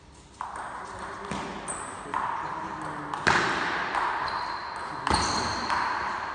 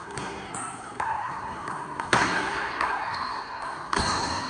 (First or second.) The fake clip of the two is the second